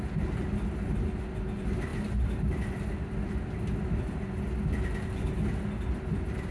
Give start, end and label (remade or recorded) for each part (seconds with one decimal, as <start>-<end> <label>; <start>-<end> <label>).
0.0-6.5 recorded